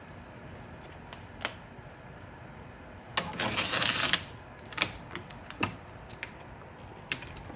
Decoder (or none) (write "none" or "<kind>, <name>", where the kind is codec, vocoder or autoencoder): none